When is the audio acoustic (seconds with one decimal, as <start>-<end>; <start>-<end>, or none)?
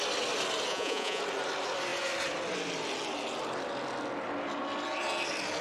0.0-0.7; 1.2-5.6